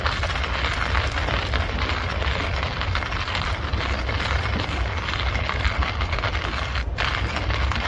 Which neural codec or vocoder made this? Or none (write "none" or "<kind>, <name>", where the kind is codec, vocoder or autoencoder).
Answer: none